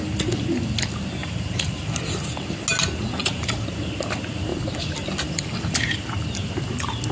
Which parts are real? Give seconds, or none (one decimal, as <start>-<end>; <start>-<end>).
0.0-1.2; 2.3-3.2; 3.8-4.5; 6.5-7.1

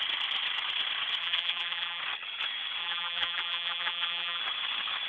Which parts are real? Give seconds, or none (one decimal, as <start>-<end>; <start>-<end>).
0.0-1.2; 2.0-2.8; 4.4-5.1

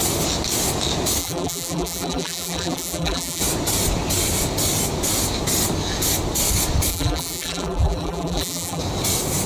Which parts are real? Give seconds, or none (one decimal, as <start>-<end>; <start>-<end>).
0.0-1.2; 3.4-6.9; 8.8-9.5

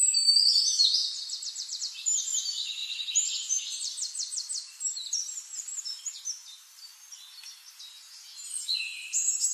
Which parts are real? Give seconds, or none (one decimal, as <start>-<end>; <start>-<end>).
6.9-8.8